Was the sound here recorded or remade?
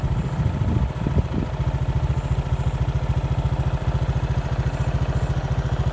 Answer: recorded